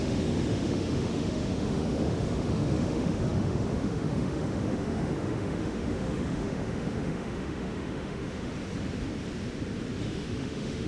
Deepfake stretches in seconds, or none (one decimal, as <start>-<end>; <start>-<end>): 0.0-8.5; 10.0-10.9